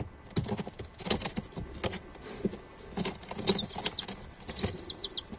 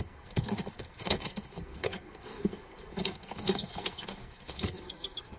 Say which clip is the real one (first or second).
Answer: first